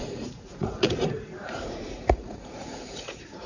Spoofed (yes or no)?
yes